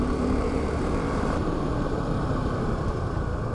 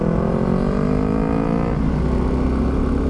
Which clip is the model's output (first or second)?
first